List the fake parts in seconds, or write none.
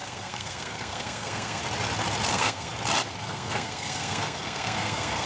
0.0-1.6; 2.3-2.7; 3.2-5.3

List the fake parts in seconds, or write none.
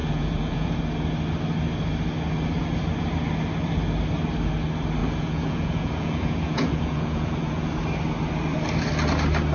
0.0-0.8; 5.0-7.7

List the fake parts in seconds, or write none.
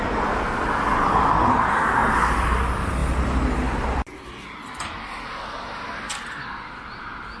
none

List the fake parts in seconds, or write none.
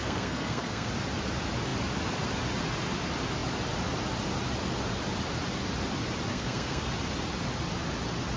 0.0-0.9; 6.3-6.9